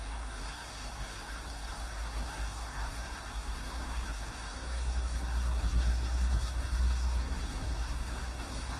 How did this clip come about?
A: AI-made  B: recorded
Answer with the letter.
A